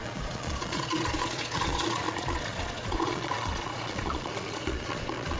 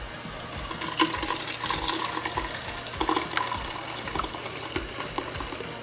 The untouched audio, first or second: second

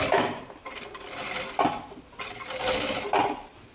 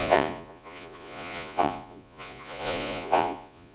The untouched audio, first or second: first